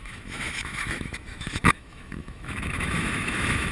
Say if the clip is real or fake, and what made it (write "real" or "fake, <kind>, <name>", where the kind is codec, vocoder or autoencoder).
fake, autoencoder, DAC-VAE